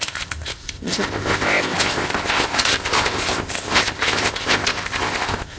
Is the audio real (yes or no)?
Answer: no